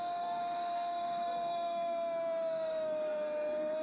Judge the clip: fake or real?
fake